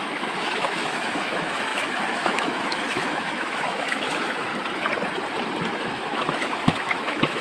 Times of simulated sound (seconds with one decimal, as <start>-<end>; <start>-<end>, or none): 0.0-4.5; 5.7-7.4